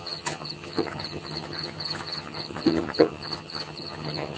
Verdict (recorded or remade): remade